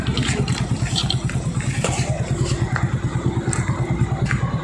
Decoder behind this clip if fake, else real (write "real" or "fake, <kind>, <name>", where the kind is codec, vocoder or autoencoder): real